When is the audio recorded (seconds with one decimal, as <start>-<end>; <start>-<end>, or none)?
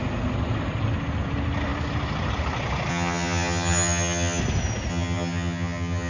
0.0-2.9; 4.4-4.9